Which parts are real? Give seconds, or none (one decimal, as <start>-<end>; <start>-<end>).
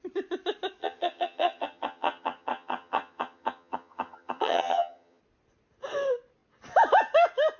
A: 0.0-0.8; 5.2-7.6